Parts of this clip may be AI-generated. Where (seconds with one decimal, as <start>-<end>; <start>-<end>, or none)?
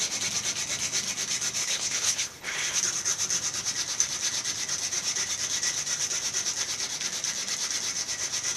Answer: 1.6-2.8